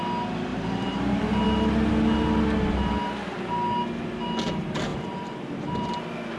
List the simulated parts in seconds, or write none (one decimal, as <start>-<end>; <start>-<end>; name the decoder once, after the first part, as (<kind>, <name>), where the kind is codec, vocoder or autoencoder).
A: 0.5-1.2 (vocoder, BigVGAN v2); 4.9-5.9